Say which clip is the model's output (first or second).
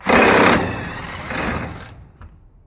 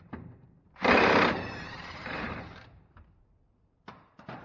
second